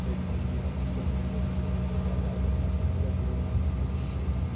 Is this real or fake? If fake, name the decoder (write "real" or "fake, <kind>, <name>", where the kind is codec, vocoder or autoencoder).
real